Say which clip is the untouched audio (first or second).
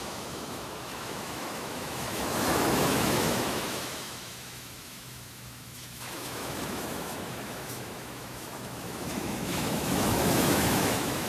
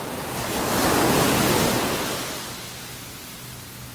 second